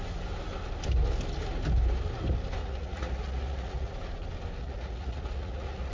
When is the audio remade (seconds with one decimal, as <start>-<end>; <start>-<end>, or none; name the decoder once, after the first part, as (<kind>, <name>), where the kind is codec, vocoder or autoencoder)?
2.6-3.9 (vocoder, Vocos); 4.6-5.9